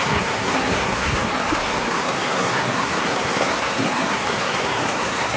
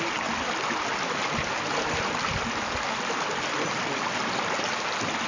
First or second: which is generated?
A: first